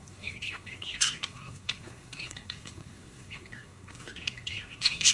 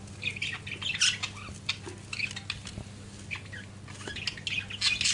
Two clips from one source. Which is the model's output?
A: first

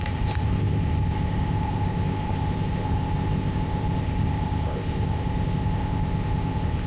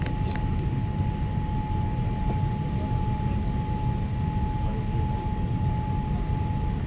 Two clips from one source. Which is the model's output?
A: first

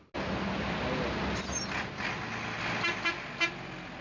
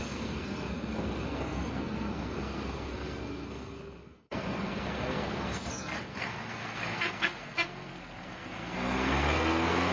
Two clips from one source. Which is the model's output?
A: second